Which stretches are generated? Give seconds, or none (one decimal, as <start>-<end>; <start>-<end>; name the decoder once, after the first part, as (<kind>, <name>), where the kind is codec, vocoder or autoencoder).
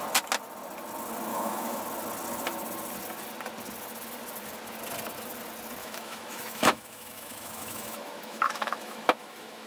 1.3-1.8 (autoencoder, DAC-VAE); 5.8-9.7